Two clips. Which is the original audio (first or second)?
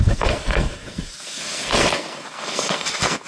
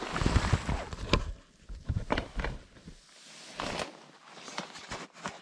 second